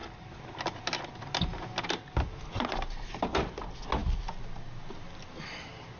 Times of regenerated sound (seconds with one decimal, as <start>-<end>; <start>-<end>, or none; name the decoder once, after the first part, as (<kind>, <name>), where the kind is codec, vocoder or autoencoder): none